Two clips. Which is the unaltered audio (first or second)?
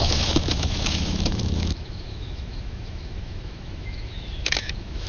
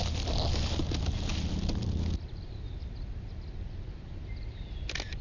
second